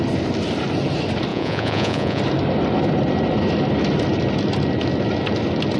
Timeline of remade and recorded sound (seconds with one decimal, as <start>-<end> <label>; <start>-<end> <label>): 0.0-1.3 recorded; 1.3-2.2 remade; 2.2-5.8 recorded